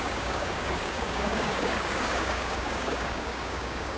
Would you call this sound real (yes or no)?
no